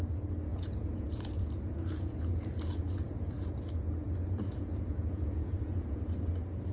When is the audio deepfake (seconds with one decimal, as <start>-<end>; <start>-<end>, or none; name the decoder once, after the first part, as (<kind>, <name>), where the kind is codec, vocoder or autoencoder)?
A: 0.5-2.5 (vocoder, Vocos); 4.0-6.0